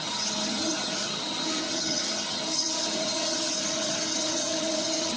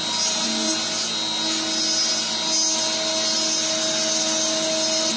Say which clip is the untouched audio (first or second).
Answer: second